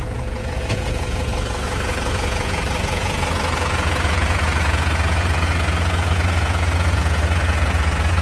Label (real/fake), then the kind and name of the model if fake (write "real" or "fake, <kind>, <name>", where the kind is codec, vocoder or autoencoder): fake, vocoder, Vocos